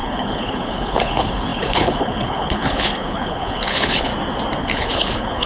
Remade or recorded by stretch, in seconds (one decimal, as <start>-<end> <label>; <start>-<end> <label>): 0.0-4.1 remade; 4.1-4.6 recorded; 4.6-5.5 remade